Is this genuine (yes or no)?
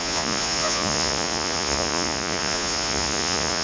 no